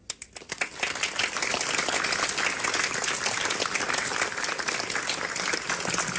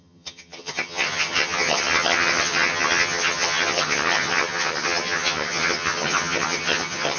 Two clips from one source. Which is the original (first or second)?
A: first